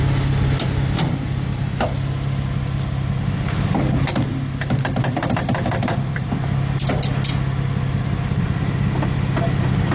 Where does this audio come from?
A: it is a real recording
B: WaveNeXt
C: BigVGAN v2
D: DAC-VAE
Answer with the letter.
A